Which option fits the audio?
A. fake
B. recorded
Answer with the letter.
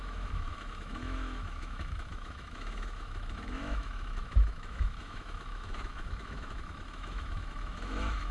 A